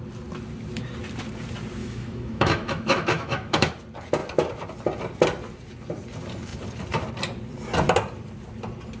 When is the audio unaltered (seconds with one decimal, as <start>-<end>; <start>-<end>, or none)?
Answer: 0.0-1.8; 3.7-9.0